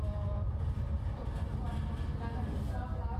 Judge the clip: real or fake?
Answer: real